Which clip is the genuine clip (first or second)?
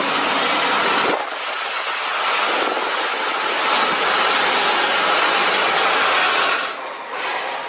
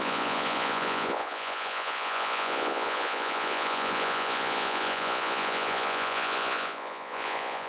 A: first